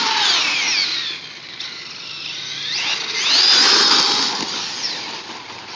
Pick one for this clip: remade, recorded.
recorded